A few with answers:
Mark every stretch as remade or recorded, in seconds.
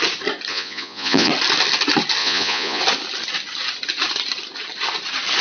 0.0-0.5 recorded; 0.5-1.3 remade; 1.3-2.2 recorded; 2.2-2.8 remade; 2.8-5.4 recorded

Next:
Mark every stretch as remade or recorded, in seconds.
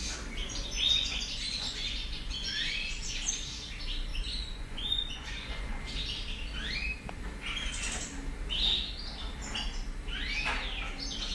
0.0-0.4 recorded; 0.4-3.1 remade; 3.1-4.1 recorded; 4.1-5.8 remade; 5.8-11.3 recorded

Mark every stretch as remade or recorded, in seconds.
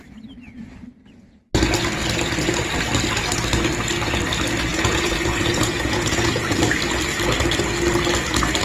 0.0-4.7 recorded; 4.7-6.6 remade; 6.6-8.6 recorded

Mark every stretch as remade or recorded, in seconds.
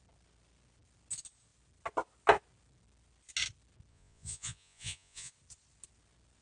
0.0-3.9 recorded; 3.9-5.3 remade; 5.3-6.4 recorded